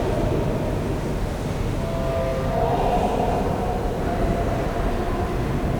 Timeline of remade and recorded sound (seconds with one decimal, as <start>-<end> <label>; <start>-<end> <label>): 0.0-5.8 recorded